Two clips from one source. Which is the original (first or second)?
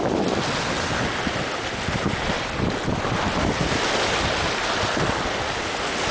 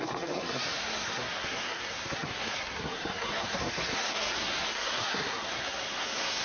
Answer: first